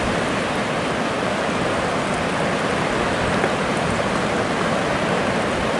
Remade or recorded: recorded